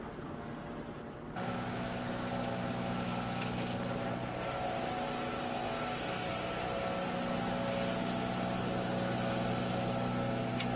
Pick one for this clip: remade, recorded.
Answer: recorded